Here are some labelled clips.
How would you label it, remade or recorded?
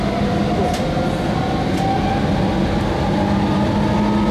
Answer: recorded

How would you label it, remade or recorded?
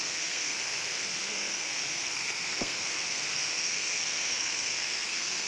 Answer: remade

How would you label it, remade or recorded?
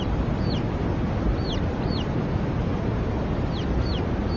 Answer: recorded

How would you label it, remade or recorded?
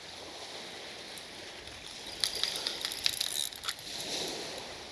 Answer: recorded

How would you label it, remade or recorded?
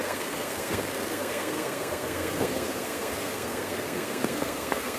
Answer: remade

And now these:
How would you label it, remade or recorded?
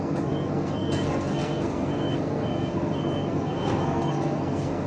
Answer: remade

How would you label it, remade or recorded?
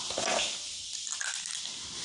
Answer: recorded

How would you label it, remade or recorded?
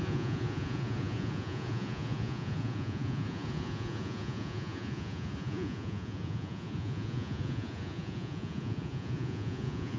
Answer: remade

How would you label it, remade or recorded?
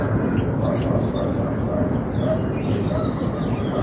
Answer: recorded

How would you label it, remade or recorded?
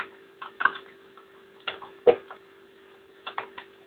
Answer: remade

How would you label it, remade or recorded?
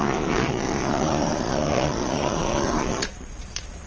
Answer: remade